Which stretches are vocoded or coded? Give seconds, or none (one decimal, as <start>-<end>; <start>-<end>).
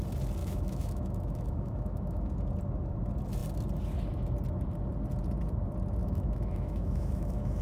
0.4-2.3; 6.0-7.6